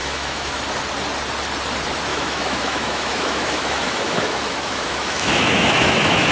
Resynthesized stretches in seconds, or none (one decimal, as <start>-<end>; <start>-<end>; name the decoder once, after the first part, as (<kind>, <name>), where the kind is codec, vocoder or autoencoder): 0.0-0.6 (autoencoder, DAC-VAE); 2.1-6.3